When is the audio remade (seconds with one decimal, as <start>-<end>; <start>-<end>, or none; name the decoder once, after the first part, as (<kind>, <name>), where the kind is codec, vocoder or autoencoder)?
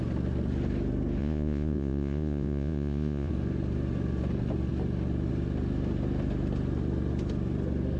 1.2-3.3 (vocoder, Vocos)